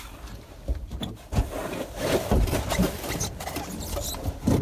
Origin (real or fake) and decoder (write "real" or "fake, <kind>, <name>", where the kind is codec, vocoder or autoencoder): real